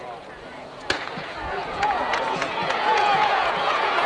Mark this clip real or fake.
fake